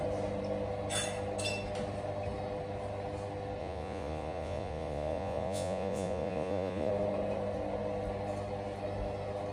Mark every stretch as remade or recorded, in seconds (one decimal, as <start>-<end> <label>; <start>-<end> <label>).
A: 0.0-3.6 recorded; 3.6-6.9 remade; 6.9-9.5 recorded